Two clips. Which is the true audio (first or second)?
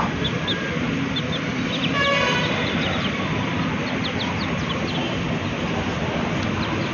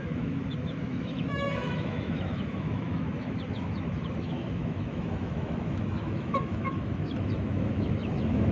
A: first